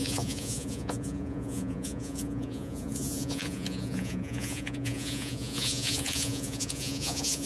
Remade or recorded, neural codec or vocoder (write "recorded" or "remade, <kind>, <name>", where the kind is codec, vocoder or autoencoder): remade, vocoder, Vocos